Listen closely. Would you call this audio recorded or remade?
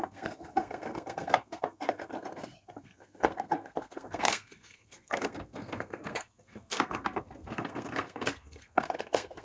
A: remade